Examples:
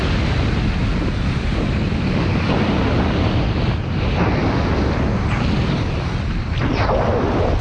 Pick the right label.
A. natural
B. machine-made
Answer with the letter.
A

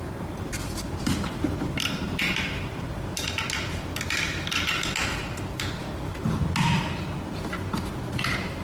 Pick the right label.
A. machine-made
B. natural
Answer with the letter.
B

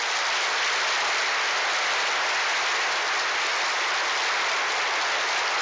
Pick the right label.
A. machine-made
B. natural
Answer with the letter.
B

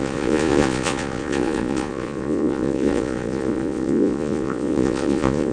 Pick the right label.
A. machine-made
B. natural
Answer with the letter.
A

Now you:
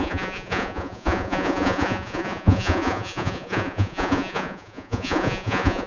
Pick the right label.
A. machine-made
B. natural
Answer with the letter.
A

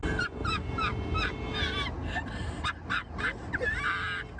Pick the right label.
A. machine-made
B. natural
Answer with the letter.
B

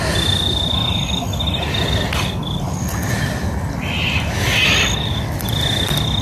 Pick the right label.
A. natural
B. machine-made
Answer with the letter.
A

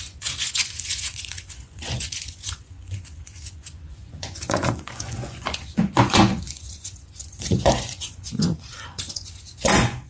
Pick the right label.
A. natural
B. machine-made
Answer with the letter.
B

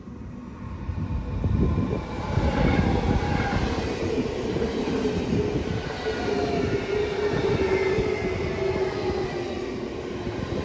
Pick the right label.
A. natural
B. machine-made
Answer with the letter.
A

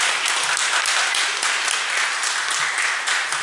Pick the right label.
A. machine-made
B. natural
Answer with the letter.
B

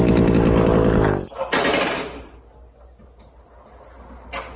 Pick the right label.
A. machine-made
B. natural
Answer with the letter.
B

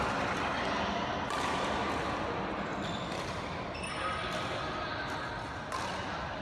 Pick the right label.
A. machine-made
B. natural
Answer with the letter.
B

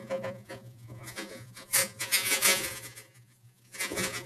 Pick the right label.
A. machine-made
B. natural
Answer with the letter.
A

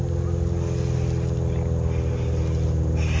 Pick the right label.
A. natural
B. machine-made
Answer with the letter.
A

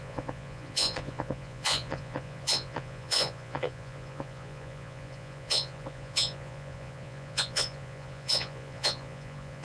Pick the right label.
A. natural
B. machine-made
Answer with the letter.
B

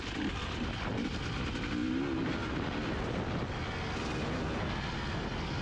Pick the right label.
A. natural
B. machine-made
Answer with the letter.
A